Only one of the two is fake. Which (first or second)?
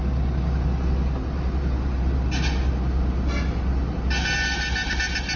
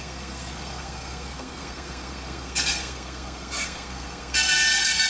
second